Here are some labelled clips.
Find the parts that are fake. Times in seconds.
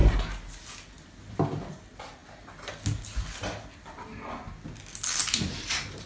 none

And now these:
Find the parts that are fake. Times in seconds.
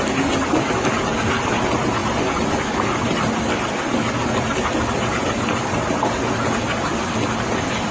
none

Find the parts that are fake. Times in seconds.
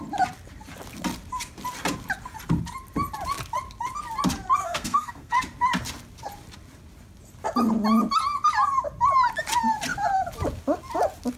4.6-5.4 (codec, SNAC)